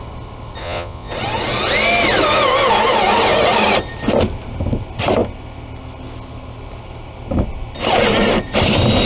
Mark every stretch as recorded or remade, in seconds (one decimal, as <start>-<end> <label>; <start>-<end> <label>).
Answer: 0.0-0.6 recorded; 0.6-1.1 remade; 1.1-9.1 recorded